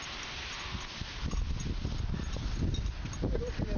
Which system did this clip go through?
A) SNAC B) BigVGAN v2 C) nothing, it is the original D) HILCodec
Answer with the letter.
C